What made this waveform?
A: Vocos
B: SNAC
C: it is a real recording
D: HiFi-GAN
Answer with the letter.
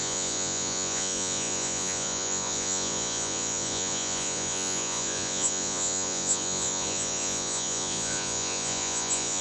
A